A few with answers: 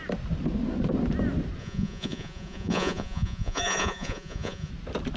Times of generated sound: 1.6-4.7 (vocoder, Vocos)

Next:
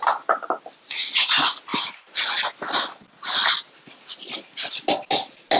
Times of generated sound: none